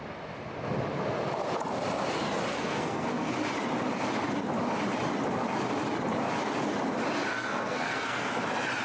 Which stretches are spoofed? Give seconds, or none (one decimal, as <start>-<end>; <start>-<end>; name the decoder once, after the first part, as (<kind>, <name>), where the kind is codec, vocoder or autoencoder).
2.5-3.3 (codec, SNAC); 7.3-8.3